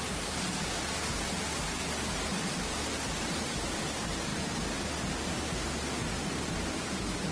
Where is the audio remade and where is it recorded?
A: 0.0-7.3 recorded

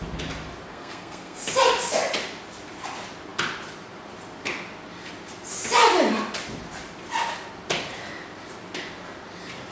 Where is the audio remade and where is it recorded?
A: 0.0-0.7 recorded; 0.7-1.5 remade; 1.5-9.7 recorded